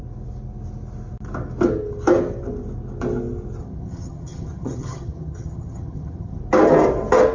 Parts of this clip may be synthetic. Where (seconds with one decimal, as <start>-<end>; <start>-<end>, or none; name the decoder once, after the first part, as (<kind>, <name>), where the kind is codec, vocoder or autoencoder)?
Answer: 3.6-6.4 (vocoder, HiFi-GAN)